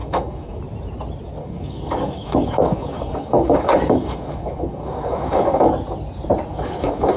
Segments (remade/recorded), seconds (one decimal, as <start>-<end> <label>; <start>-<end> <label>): 0.0-0.6 remade; 0.6-1.4 recorded; 1.4-5.7 remade; 5.7-6.5 recorded; 6.5-7.2 remade

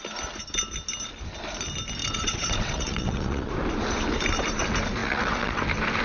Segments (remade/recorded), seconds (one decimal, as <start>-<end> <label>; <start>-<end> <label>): 0.0-2.0 recorded; 2.0-3.5 remade; 3.5-5.0 recorded; 5.0-5.6 remade; 5.6-6.0 recorded

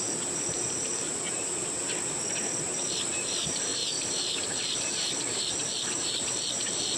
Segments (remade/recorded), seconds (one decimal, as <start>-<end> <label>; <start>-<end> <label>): 0.0-1.8 remade; 1.8-2.6 recorded; 2.6-7.0 remade